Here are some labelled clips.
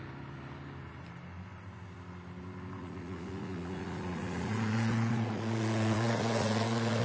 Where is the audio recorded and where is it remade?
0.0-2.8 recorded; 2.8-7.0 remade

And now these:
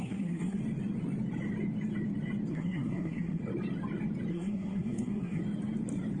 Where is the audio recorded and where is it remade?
0.0-0.6 remade; 0.6-2.5 recorded; 2.5-3.4 remade; 3.4-4.3 recorded; 4.3-5.4 remade; 5.4-6.2 recorded

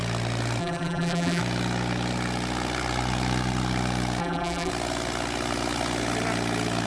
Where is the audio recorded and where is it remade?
0.0-0.6 recorded; 0.6-1.4 remade; 1.4-4.2 recorded; 4.2-4.7 remade; 4.7-6.9 recorded

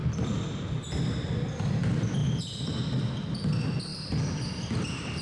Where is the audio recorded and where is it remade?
0.0-5.2 recorded

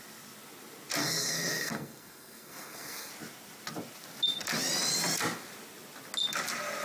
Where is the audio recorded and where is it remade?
0.0-1.0 recorded; 1.0-3.1 remade; 3.1-6.8 recorded

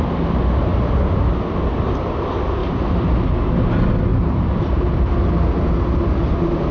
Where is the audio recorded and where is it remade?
0.0-2.6 recorded; 2.6-3.2 remade; 3.2-4.1 recorded; 4.1-5.1 remade; 5.1-6.7 recorded

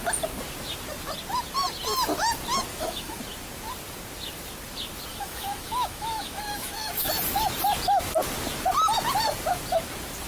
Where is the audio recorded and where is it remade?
0.0-2.7 recorded; 2.7-3.2 remade; 3.2-5.1 recorded; 5.1-7.1 remade; 7.1-10.3 recorded